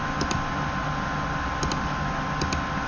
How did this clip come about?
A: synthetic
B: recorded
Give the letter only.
B